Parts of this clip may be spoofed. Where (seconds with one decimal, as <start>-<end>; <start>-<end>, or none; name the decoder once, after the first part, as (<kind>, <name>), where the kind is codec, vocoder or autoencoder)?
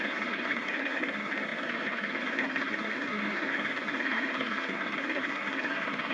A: 0.0-6.1 (codec, SNAC)